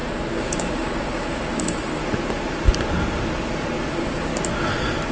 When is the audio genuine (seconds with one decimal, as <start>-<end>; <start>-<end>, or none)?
2.0-3.9; 4.3-5.1

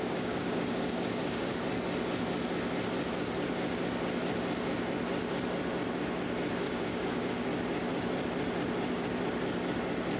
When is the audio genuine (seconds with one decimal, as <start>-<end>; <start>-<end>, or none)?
1.5-6.5; 7.5-10.2

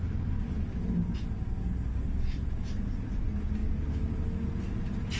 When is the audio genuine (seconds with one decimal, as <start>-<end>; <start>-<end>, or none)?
0.0-5.2

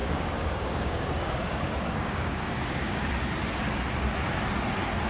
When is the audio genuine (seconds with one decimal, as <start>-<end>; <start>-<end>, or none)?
3.1-5.1